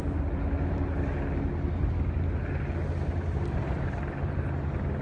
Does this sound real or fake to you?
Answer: real